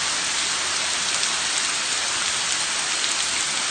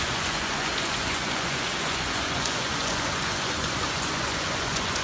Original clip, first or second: first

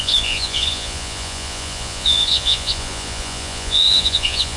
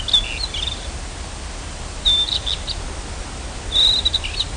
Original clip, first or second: second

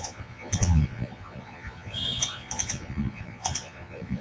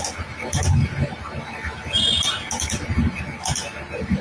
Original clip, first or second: second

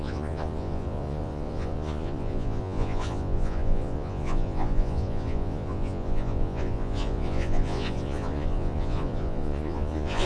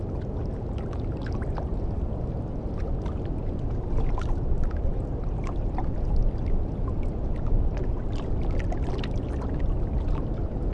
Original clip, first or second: second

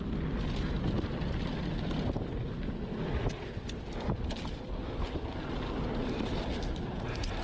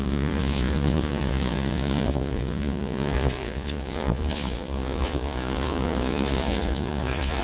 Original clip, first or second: first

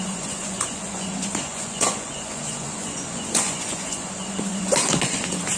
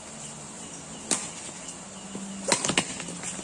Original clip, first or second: second